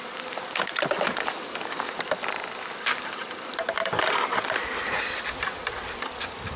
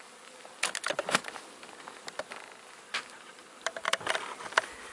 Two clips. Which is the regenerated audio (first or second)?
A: first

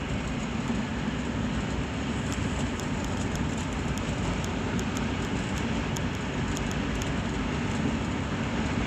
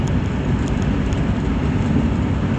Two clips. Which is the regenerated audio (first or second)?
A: second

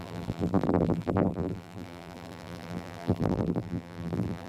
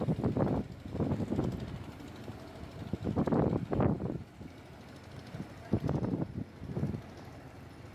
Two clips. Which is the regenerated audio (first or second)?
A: first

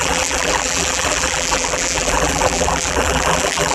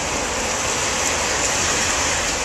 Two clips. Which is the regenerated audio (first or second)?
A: first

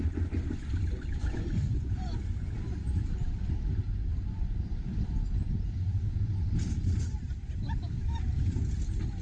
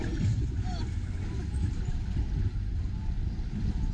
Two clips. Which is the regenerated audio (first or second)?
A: first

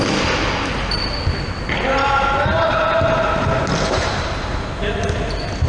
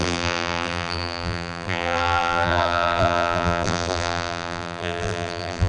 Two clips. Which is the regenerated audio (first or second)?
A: second